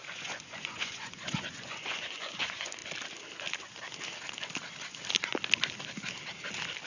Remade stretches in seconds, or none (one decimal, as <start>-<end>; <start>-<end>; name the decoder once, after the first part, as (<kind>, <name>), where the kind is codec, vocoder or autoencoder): 0.0-2.8 (vocoder, Vocos)